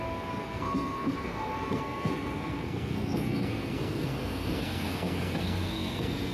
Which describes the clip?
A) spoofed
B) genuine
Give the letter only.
A